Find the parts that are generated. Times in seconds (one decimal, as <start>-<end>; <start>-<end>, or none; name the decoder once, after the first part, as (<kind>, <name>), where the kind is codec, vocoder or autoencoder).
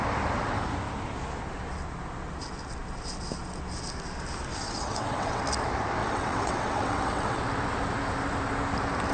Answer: 4.5-5.4 (vocoder, WaveNeXt); 6.0-7.4